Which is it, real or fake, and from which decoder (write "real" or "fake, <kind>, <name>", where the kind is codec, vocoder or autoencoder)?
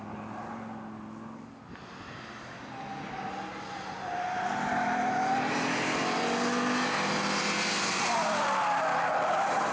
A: real